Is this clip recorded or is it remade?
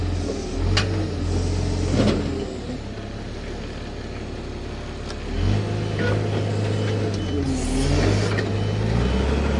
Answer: recorded